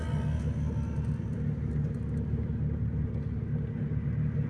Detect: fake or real real